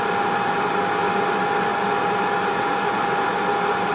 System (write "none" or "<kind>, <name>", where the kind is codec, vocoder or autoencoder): none